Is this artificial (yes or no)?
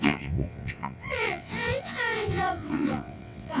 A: yes